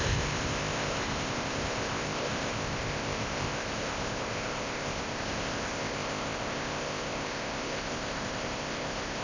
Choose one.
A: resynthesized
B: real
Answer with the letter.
A